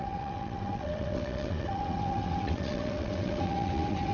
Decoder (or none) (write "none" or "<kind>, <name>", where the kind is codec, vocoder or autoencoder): vocoder, WaveNeXt